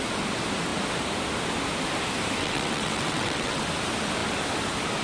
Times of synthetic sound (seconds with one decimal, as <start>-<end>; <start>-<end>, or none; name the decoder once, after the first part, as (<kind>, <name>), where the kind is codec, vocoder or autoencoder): 2.4-3.6 (vocoder, WaveNeXt)